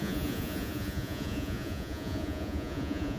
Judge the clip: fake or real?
fake